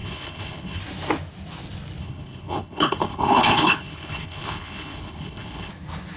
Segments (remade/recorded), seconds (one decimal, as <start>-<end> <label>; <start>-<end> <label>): 0.0-0.8 remade; 0.8-2.0 recorded; 2.0-5.7 remade; 5.7-6.2 recorded